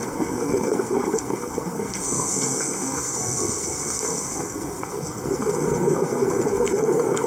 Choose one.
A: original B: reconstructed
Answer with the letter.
B